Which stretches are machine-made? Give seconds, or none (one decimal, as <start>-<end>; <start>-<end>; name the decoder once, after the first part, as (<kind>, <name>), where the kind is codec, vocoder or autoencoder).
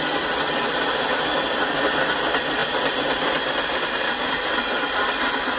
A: none